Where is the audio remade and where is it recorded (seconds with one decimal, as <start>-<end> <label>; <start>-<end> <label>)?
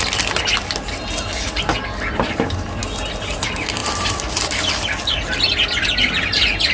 0.0-3.8 recorded; 3.8-4.9 remade; 4.9-6.7 recorded